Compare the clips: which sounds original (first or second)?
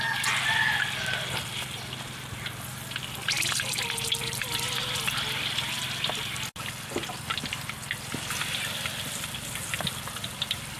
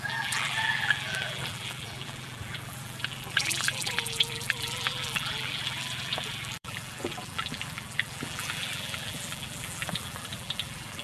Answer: first